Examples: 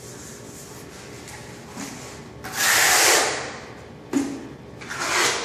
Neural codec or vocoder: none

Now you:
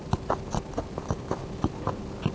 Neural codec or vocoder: none